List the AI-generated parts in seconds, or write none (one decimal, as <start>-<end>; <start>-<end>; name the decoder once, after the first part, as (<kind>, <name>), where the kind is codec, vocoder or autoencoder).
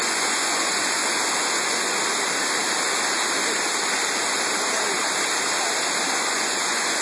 0.0-1.0 (vocoder, Vocos); 1.5-1.9; 6.1-7.0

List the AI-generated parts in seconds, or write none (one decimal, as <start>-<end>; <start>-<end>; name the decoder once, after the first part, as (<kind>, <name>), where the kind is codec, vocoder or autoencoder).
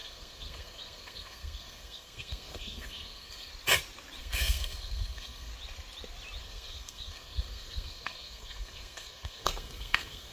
0.0-3.5 (codec, SNAC); 4.2-5.5; 6.4-10.3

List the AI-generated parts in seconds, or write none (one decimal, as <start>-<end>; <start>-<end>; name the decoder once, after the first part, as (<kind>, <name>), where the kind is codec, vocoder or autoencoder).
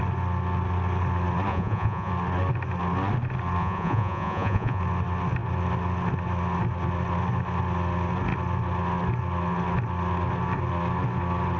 1.5-2.1 (vocoder, Vocos); 3.6-4.8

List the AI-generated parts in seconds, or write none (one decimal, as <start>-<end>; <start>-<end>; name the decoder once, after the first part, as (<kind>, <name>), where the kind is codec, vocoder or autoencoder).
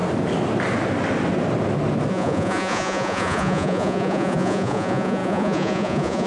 2.1-6.3 (vocoder, Vocos)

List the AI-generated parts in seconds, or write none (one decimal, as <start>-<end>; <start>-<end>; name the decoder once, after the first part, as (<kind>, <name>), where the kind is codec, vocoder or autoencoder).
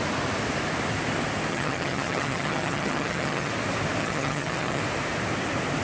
1.5-3.5 (vocoder, HiFi-GAN); 4.0-4.8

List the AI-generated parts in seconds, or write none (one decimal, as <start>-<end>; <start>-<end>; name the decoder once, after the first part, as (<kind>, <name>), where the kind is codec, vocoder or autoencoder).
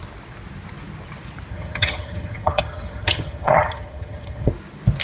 1.5-4.5 (vocoder, HiFi-GAN)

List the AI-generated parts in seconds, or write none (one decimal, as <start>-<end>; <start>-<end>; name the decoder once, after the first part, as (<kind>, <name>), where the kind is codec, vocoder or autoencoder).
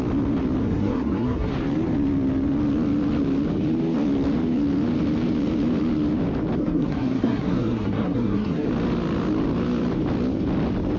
0.6-1.5 (codec, SNAC); 6.6-8.7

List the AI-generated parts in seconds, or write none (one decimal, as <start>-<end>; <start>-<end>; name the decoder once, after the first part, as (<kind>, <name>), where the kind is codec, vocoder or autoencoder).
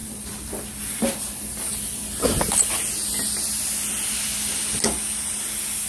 0.0-1.8 (vocoder, BigVGAN v2)